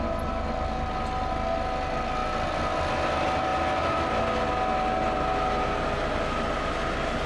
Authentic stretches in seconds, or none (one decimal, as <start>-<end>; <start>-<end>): 0.0-7.3